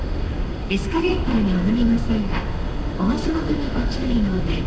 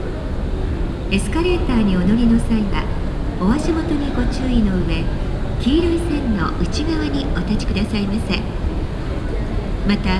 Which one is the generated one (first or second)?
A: first